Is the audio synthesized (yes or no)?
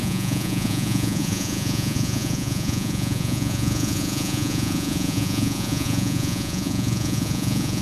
yes